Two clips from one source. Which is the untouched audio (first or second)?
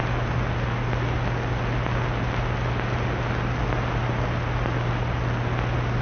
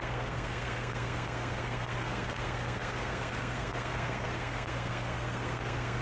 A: first